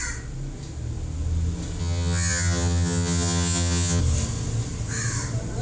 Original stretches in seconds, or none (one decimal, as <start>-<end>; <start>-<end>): 0.0-1.8; 4.0-5.6